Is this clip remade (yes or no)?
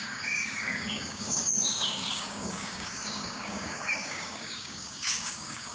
yes